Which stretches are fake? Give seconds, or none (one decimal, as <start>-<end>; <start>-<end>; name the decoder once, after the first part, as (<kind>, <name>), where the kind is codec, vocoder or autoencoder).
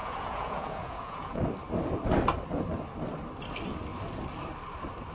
0.0-1.4 (vocoder, Vocos)